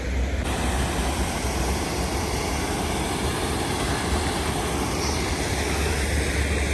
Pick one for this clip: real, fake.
real